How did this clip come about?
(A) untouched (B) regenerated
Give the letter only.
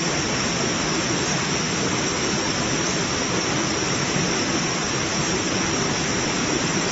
A